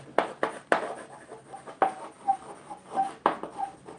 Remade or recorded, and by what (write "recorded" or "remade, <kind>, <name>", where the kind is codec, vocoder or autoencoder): recorded